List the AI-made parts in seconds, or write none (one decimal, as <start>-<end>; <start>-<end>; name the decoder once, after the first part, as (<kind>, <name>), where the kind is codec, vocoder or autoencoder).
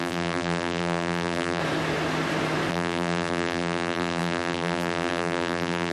0.0-1.6 (vocoder, BigVGAN v2); 2.7-5.9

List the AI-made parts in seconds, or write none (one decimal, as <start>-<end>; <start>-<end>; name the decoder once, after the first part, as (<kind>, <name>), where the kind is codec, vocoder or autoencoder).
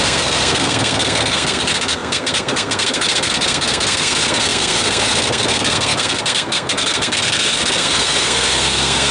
0.0-9.1 (codec, SNAC)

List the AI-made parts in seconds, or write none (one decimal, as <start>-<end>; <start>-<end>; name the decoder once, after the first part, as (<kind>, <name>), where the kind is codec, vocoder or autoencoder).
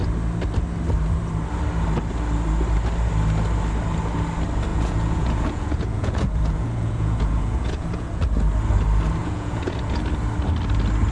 4.7-8.2 (vocoder, Vocos); 9.2-10.0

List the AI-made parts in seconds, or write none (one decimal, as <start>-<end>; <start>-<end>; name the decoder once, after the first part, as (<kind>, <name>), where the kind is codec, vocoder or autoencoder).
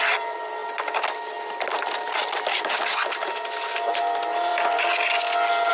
none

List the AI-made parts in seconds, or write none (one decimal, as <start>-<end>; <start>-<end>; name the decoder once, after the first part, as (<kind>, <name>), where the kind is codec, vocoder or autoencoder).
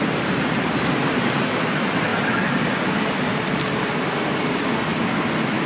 1.0-1.7 (vocoder, BigVGAN v2)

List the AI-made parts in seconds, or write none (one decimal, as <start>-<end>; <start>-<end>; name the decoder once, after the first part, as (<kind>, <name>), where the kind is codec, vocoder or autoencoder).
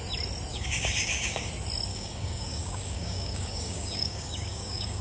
0.5-1.5 (codec, DAC); 1.9-5.0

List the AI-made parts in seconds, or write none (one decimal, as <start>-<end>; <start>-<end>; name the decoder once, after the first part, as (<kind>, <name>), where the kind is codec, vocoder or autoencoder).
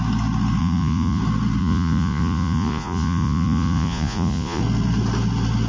0.6-1.2 (vocoder, Vocos); 1.6-4.6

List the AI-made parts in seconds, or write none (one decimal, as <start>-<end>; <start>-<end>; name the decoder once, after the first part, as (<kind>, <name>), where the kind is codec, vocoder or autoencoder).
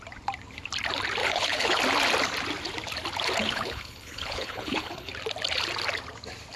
1.2-1.8 (codec, HILCodec); 3.4-5.1